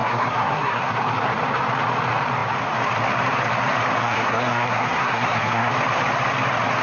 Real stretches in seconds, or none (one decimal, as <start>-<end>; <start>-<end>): 0.9-4.0; 5.7-6.8